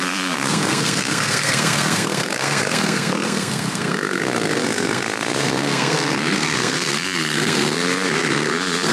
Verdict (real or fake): fake